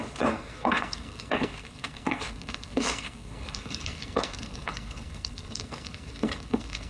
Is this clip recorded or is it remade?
remade